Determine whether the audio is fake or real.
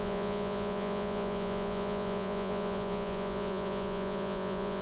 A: fake